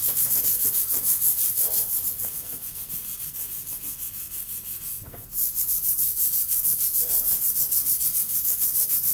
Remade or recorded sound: remade